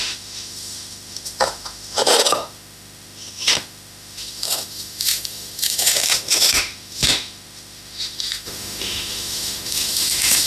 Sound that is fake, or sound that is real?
fake